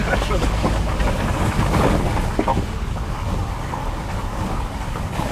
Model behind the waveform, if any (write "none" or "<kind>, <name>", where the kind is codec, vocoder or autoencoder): codec, DAC